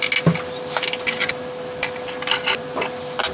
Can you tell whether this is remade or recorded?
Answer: recorded